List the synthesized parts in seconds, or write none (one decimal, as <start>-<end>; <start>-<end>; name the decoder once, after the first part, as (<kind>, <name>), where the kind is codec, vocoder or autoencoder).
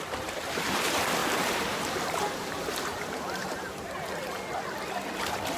1.2-3.9 (vocoder, BigVGAN v2)